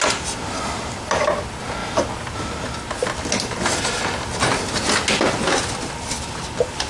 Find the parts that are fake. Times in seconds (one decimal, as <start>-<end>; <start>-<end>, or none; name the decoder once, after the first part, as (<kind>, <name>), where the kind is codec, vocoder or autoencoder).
none